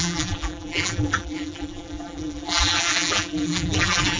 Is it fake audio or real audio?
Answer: fake